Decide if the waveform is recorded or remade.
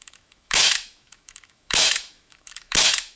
remade